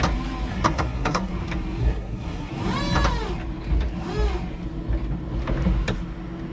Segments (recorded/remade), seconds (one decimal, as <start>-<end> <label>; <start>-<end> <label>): 0.0-0.5 recorded; 0.5-1.3 remade; 1.3-1.8 recorded; 1.8-2.5 remade; 2.5-6.5 recorded